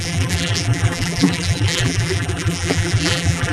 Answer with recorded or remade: remade